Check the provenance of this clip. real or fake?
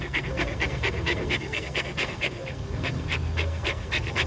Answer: fake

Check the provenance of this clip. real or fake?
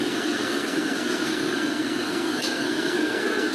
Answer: fake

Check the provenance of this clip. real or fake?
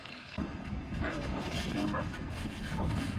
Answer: fake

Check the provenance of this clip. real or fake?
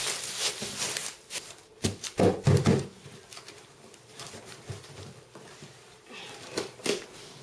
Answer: real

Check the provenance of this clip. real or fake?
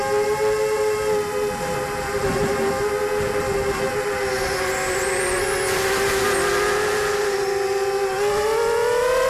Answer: real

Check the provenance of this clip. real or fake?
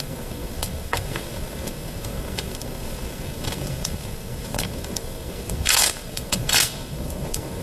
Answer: fake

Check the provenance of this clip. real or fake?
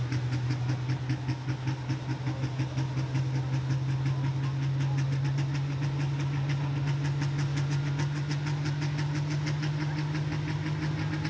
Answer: real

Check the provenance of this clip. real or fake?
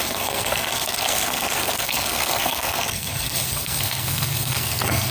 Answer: fake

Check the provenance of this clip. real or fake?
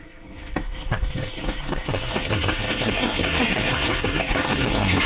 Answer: fake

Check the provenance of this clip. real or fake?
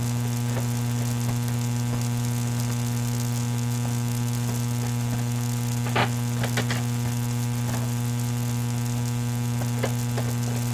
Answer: real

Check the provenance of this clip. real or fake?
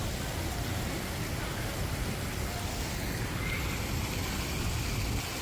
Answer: real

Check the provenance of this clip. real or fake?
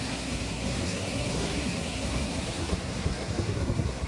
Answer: fake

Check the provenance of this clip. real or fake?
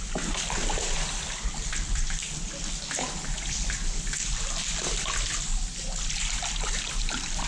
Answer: real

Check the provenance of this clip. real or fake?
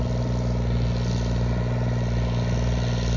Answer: real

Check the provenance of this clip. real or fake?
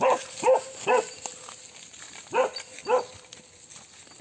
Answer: real